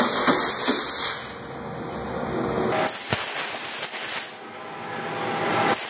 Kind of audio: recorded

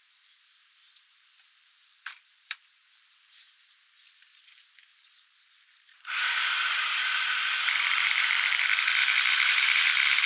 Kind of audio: remade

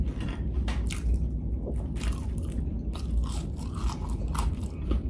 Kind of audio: remade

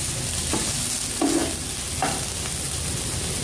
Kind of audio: recorded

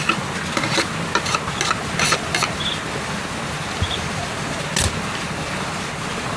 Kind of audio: recorded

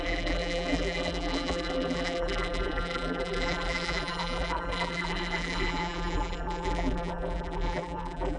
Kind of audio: remade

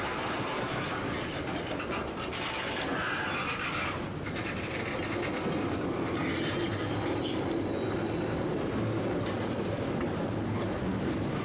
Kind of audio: recorded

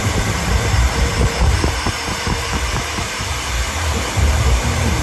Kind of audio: remade